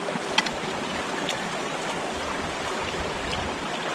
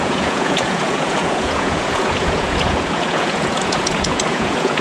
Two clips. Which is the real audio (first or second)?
first